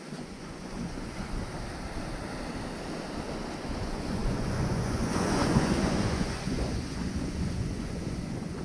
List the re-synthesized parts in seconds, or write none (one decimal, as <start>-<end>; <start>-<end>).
0.0-1.4; 3.6-8.6